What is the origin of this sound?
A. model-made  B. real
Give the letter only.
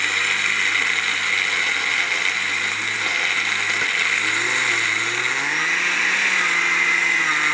B